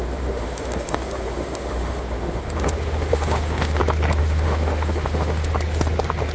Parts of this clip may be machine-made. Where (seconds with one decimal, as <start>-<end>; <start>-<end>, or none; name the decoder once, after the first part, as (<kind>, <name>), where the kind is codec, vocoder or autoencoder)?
0.0-3.8 (autoencoder, DAC-VAE); 4.2-5.5